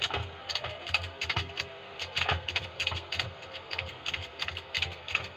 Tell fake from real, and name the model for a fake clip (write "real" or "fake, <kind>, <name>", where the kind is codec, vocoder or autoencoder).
fake, codec, SNAC